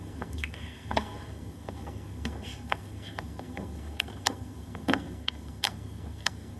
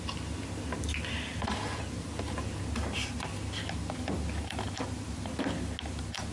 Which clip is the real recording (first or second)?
second